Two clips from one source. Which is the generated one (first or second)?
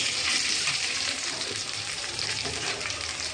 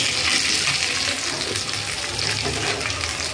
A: first